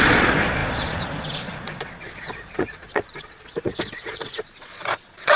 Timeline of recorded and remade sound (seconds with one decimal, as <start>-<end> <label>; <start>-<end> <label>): 0.0-5.4 remade